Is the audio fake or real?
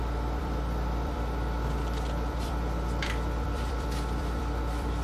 fake